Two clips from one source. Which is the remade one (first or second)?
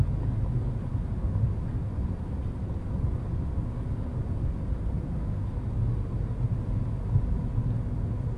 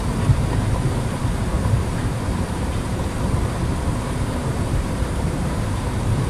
second